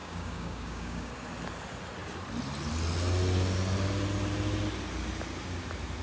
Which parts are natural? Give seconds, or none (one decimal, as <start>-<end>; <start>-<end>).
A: 1.1-6.0